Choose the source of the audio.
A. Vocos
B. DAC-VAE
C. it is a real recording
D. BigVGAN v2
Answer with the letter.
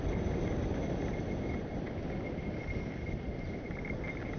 C